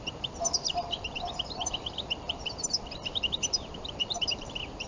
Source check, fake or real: fake